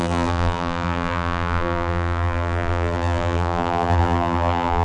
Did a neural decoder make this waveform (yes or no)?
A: yes